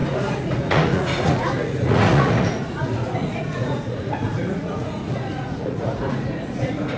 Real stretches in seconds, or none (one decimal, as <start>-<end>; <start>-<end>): none